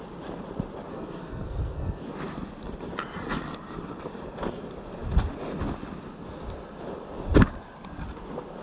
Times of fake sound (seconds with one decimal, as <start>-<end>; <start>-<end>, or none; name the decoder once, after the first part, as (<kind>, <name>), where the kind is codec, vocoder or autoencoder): 0.9-2.0 (codec, SNAC)

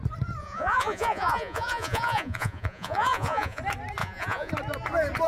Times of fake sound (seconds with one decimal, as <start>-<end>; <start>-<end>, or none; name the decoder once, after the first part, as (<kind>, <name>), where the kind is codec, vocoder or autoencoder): 0.4-3.6 (vocoder, Vocos); 4.0-4.5

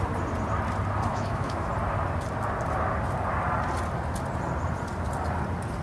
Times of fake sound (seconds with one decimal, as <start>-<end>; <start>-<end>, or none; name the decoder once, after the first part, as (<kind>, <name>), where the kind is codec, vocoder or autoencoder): 1.1-1.7 (autoencoder, DAC-VAE)

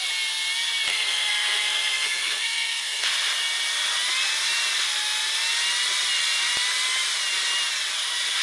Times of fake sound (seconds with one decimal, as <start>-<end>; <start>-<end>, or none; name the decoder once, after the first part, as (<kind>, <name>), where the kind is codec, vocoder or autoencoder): 0.9-3.1 (codec, SNAC)